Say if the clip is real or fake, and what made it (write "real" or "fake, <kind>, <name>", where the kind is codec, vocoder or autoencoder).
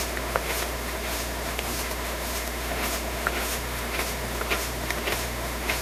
fake, autoencoder, DAC-VAE